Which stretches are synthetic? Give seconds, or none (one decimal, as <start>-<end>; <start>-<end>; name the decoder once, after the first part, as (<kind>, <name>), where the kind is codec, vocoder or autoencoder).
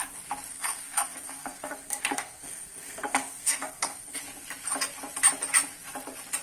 0.5-4.2 (codec, SNAC)